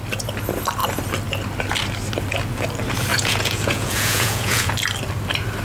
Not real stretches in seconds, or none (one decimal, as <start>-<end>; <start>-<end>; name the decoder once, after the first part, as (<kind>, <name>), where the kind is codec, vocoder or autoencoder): 3.1-4.7 (vocoder, Vocos)

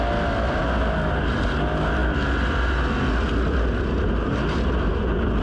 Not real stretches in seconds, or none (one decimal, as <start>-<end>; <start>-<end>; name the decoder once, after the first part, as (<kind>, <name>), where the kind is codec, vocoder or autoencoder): none

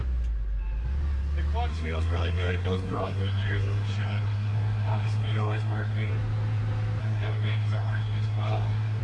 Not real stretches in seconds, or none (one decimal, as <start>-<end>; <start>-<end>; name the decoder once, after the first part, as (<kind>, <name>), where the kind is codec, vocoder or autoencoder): 1.7-6.1 (codec, SNAC); 7.0-9.0